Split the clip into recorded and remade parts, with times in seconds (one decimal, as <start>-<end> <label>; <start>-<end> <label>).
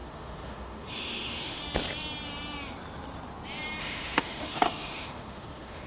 0.0-1.6 remade; 1.6-3.8 recorded; 3.8-5.9 remade